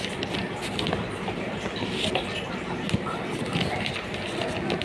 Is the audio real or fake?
real